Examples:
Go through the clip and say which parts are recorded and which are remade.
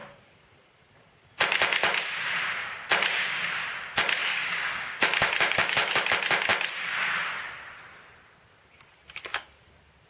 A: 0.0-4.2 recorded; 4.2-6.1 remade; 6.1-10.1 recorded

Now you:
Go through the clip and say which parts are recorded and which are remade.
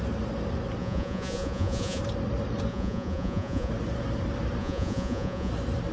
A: 0.0-0.8 recorded; 0.8-2.0 remade; 2.0-2.7 recorded; 2.7-3.7 remade; 3.7-4.6 recorded; 4.6-5.5 remade; 5.5-5.9 recorded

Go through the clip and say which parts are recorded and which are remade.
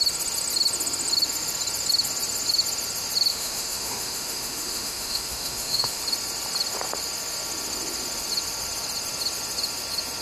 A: 0.0-3.3 recorded; 3.3-6.0 remade; 6.0-10.2 recorded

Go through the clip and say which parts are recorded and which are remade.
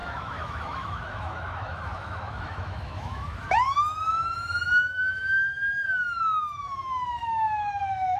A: 0.0-8.2 remade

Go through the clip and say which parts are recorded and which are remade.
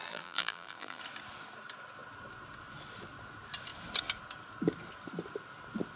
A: 0.0-1.0 remade; 1.0-6.0 recorded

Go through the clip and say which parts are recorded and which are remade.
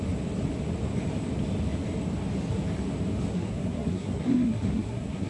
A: 0.0-3.3 recorded; 3.3-5.3 remade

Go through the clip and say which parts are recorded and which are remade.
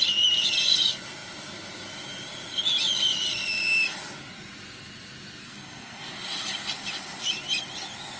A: 0.0-5.4 recorded; 5.4-6.1 remade; 6.1-8.2 recorded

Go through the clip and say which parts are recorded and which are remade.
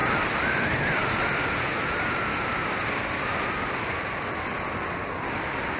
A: 0.0-0.6 remade; 0.6-5.8 recorded